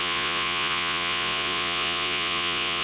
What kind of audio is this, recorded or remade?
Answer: remade